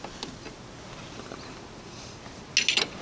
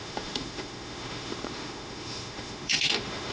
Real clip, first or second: first